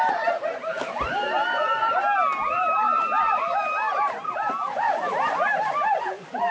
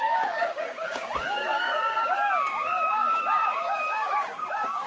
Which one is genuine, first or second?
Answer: first